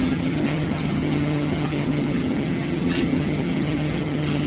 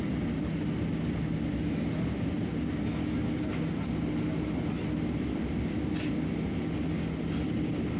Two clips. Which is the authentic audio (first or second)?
second